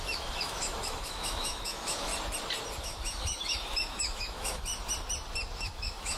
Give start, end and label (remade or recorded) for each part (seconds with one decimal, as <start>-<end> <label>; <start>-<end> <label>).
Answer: 0.0-2.1 remade; 2.1-2.8 recorded; 2.8-4.7 remade; 4.7-5.6 recorded; 5.6-6.2 remade